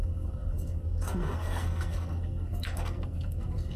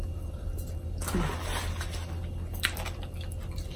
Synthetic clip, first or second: first